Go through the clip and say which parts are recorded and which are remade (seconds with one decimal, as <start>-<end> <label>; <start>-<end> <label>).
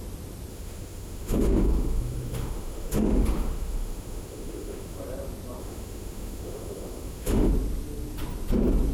0.0-0.5 recorded; 0.5-5.0 remade; 5.0-5.6 recorded; 5.6-7.5 remade; 7.5-8.9 recorded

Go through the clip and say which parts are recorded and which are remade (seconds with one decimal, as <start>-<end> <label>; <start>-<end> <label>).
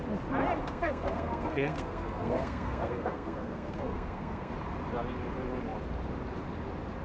0.0-0.6 recorded; 0.6-4.5 remade; 4.5-7.0 recorded